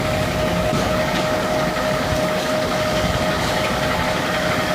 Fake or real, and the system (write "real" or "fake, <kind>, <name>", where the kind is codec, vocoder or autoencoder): fake, codec, DAC